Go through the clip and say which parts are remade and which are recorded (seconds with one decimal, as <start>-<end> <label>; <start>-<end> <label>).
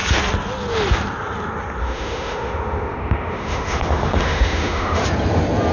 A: 0.0-1.8 recorded; 1.8-5.0 remade; 5.0-5.7 recorded